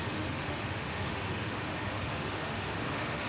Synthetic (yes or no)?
yes